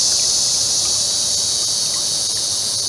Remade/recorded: recorded